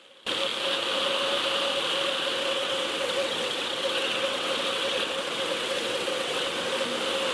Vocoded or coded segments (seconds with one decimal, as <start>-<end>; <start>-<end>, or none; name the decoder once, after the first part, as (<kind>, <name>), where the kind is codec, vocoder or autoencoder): 2.3-6.7 (vocoder, WaveNeXt)